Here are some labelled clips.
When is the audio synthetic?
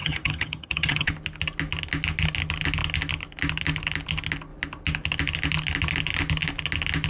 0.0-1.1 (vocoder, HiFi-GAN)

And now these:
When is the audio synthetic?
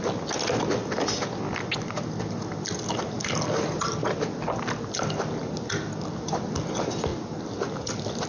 none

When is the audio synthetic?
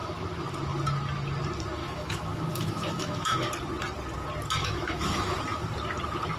1.8-3.5 (autoencoder, DAC-VAE); 4.6-5.4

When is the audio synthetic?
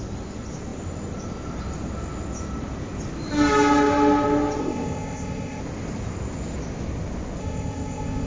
4.6-5.6 (codec, ZipCodec); 7.4-8.3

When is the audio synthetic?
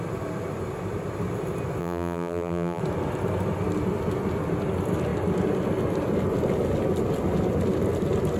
1.8-2.8 (vocoder, BigVGAN v2)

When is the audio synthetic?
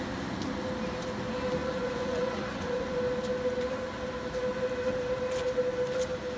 1.6-3.0 (vocoder, Vocos)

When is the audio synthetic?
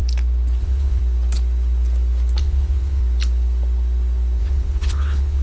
0.6-1.0 (vocoder, WaveNeXt); 2.4-3.0; 4.4-5.4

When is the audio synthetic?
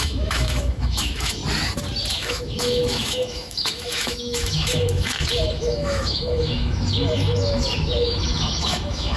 0.0-1.4 (autoencoder, DAC-VAE); 2.1-9.2